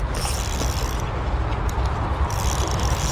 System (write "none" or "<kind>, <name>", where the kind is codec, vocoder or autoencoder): none